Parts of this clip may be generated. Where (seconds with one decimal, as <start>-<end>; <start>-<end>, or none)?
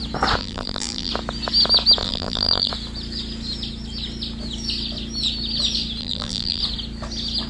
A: 0.4-1.1; 2.0-2.7; 6.0-6.6